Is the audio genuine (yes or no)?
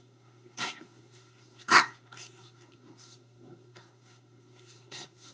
no